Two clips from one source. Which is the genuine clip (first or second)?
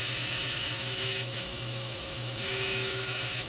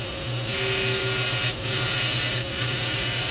second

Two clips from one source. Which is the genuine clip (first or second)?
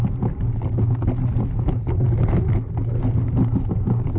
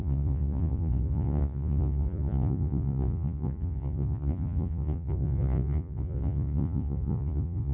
first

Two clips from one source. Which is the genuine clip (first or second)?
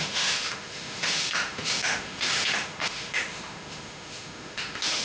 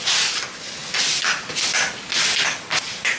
second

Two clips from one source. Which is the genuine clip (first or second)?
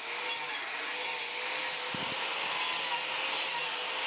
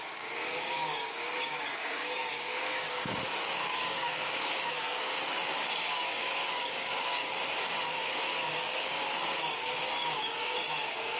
first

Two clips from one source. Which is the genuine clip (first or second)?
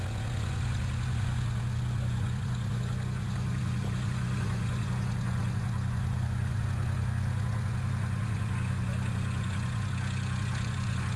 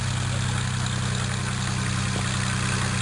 second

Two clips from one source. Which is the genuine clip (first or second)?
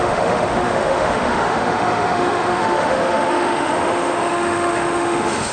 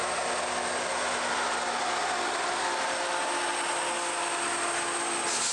second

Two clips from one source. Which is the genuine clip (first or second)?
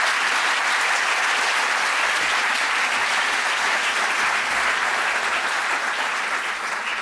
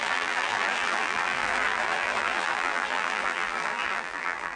first